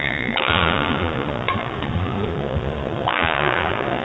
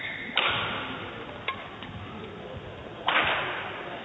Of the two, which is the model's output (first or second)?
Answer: first